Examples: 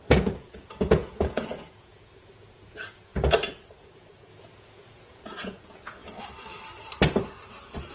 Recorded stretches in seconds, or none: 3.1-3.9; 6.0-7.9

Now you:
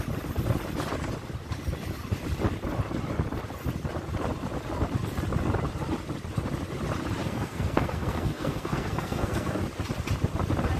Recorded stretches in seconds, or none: 0.0-7.2; 9.6-10.8